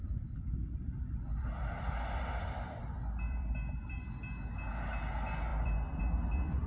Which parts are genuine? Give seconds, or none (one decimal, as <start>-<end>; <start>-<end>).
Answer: 4.0-5.5; 6.0-6.7